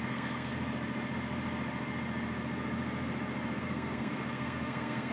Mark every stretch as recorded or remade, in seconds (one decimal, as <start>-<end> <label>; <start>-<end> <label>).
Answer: 0.0-0.5 remade; 0.5-3.6 recorded; 3.6-5.1 remade